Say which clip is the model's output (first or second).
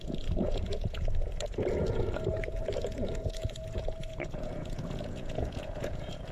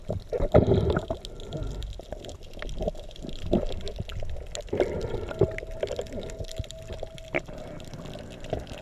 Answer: first